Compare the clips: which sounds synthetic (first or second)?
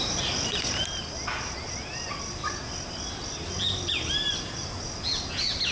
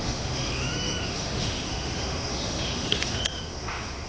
second